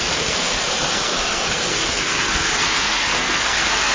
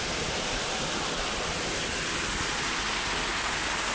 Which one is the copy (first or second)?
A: first